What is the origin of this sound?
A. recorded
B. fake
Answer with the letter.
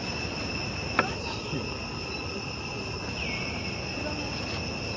A